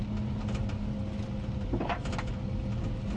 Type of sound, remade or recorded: recorded